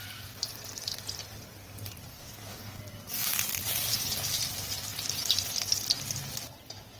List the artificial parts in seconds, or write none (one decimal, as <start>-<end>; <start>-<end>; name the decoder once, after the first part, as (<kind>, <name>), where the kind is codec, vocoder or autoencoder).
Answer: 2.1-2.8 (codec, DAC)